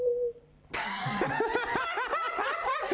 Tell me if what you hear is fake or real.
real